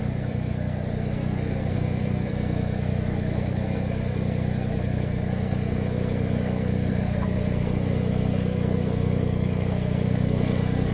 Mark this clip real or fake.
fake